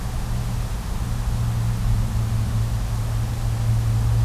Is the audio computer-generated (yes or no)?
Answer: no